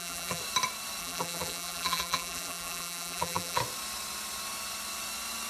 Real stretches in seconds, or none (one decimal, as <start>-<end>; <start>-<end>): 0.4-1.0; 3.6-5.5